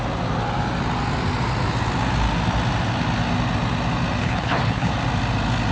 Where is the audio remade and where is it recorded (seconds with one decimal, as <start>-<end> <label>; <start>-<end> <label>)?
0.0-4.2 recorded; 4.2-4.9 remade; 4.9-5.7 recorded